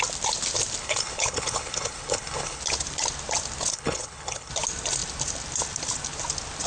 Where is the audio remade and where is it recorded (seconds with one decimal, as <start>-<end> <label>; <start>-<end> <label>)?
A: 0.0-0.8 recorded; 0.8-2.6 remade; 2.6-3.7 recorded; 3.7-4.5 remade; 4.5-6.7 recorded